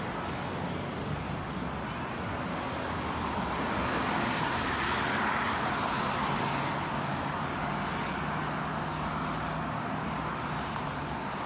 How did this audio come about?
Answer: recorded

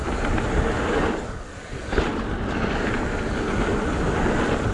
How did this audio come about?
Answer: recorded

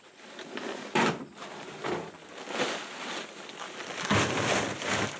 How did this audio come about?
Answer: recorded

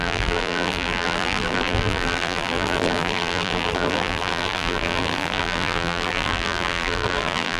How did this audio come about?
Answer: remade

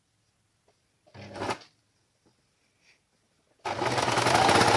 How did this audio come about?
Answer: recorded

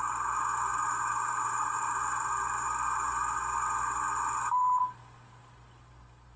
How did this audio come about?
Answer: recorded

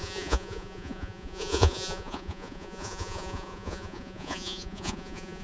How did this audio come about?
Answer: remade